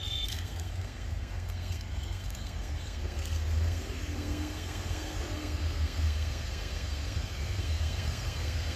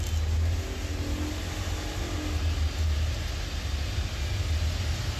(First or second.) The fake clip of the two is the first